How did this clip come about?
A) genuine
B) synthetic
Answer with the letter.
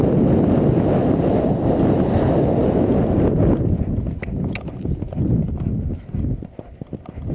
A